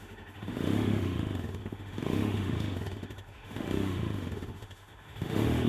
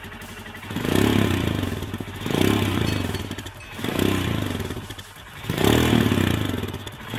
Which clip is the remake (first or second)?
first